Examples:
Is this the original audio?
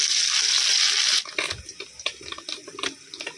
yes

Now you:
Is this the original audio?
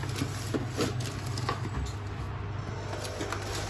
yes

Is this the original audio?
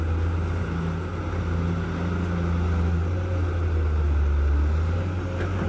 yes